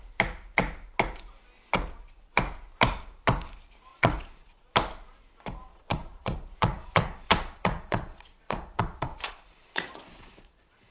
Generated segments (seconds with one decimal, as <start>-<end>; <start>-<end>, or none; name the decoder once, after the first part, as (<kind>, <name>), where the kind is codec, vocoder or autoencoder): 3.9-4.7 (vocoder, Vocos); 5.7-10.9